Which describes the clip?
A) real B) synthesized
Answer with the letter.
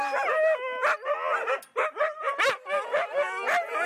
A